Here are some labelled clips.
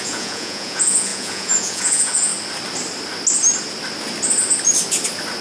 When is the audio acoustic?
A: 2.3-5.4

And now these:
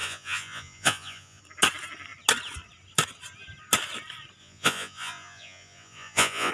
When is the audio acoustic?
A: 1.4-4.4

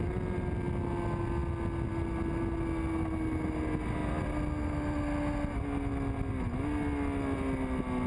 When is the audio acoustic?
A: 0.0-8.1

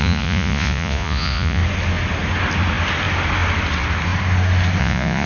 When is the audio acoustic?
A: 1.6-4.8

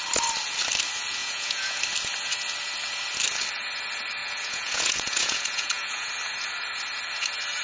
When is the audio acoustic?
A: 0.0-1.2; 1.8-4.2; 6.1-7.6